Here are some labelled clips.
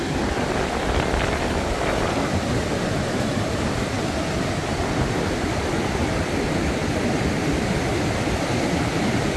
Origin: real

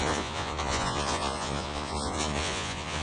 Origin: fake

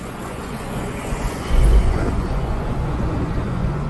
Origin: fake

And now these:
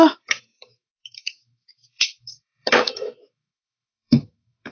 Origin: fake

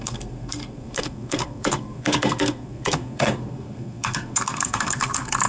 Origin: fake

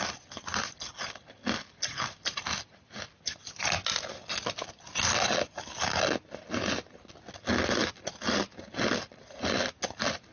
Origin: real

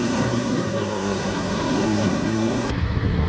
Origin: fake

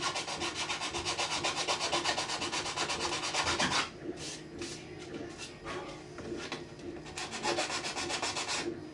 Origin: real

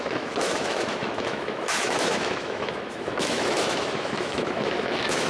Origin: fake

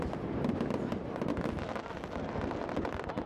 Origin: real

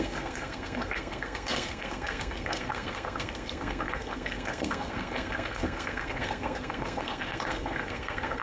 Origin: fake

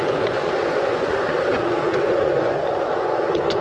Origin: fake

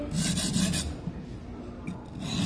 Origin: real